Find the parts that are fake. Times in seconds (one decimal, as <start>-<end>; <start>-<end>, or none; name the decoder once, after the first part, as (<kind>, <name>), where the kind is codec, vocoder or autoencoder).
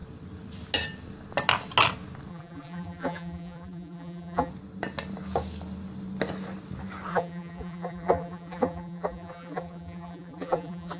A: 2.3-4.5 (vocoder, BigVGAN v2); 7.1-11.0